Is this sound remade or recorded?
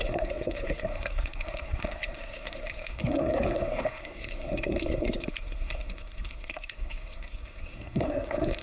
remade